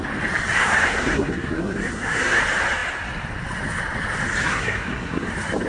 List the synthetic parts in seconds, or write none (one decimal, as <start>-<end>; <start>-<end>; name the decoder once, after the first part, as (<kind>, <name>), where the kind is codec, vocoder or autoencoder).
0.6-2.4 (codec, SNAC); 4.5-5.3